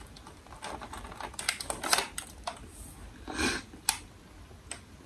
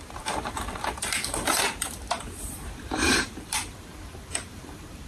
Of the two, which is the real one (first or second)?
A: first